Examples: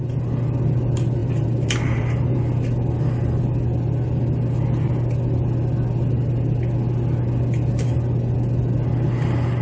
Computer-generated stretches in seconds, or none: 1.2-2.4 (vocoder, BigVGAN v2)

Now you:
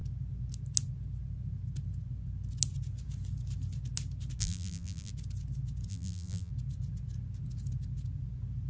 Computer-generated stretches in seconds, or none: 4.4-5.1 (vocoder, BigVGAN v2); 5.9-6.5

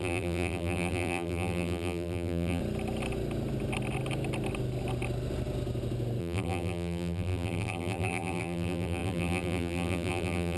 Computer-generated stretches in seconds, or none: 0.0-2.6 (vocoder, BigVGAN v2); 6.2-10.6

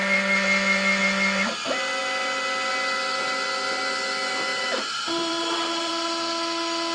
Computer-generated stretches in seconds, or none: 4.5-5.9 (vocoder, BigVGAN v2)